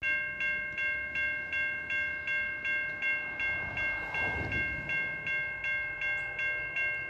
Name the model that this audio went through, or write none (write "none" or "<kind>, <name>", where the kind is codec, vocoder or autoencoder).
none